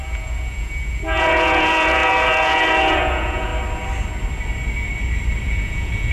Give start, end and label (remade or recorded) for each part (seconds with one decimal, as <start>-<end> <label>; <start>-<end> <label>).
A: 0.0-3.5 remade; 3.5-5.4 recorded; 5.4-6.1 remade